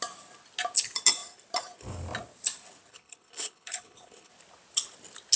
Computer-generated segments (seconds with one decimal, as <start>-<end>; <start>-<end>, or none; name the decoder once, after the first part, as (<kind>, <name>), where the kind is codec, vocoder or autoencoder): 2.9-4.3 (codec, HILCodec)